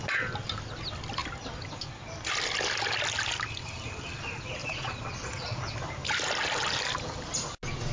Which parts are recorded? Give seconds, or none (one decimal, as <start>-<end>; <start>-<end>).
0.0-4.6; 5.6-7.9